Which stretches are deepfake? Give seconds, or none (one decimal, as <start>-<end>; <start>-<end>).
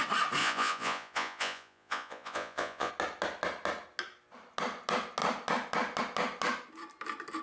0.4-2.9